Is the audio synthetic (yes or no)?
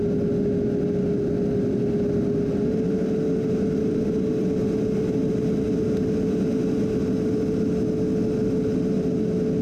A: no